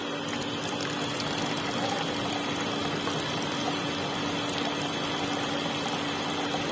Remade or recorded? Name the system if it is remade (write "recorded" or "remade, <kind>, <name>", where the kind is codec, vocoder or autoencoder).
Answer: recorded